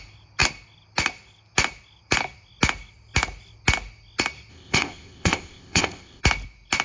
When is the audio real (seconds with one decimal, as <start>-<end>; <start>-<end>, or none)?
0.0-4.5; 6.2-6.8